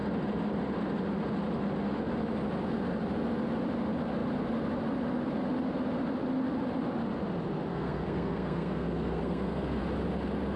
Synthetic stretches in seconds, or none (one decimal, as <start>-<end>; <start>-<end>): 7.7-9.8